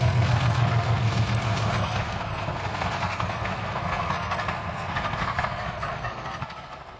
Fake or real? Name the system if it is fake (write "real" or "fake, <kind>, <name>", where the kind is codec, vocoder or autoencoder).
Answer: fake, codec, SNAC